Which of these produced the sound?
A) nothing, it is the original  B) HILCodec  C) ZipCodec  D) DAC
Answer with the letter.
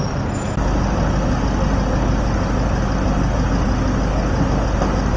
A